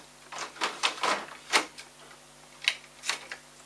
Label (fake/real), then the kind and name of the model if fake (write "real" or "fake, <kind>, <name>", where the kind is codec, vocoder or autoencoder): real